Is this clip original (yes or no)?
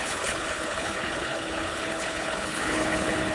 no